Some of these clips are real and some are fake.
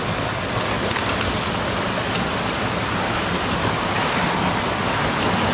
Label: real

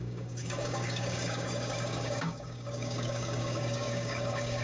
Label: fake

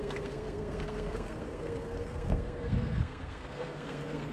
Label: fake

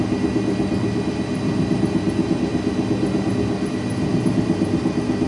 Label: real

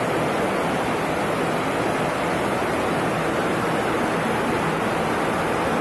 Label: real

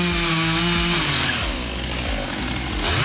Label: real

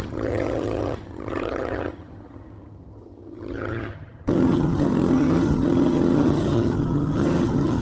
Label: fake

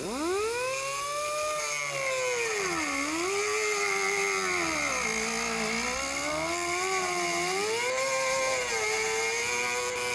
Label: real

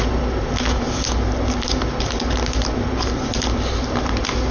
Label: real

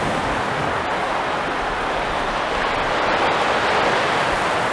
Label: real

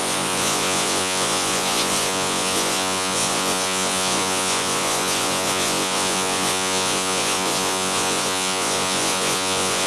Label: fake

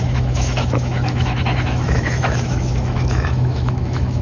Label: fake